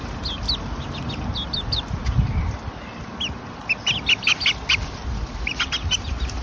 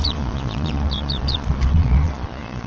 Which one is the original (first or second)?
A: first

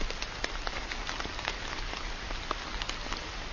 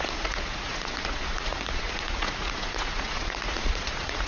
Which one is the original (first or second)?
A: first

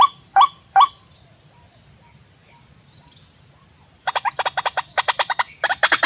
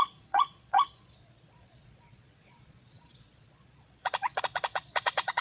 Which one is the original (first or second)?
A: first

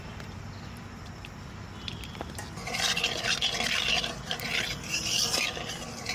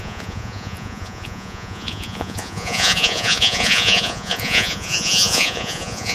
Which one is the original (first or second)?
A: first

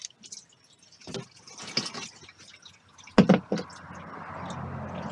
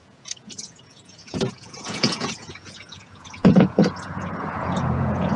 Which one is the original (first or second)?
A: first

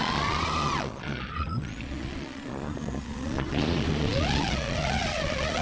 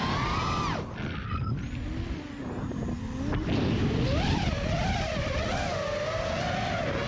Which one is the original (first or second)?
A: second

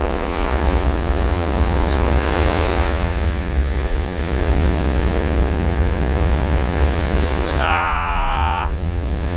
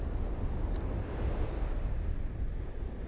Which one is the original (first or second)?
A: second